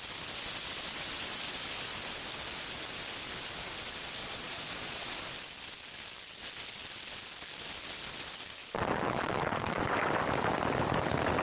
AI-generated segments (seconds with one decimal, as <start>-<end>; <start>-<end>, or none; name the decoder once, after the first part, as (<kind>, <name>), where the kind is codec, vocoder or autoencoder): 4.2-5.2 (vocoder, Vocos); 8.6-9.9